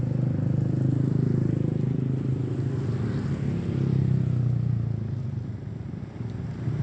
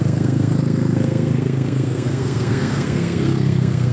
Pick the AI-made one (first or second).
second